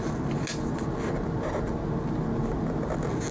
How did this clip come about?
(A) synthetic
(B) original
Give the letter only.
B